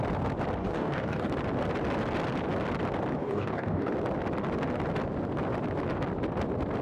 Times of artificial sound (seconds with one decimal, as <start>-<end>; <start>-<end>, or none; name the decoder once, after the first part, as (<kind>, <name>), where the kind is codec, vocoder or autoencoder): 0.6-1.3 (codec, DAC); 3.2-3.9